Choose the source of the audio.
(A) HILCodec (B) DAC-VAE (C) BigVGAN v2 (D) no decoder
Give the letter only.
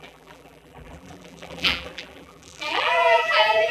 C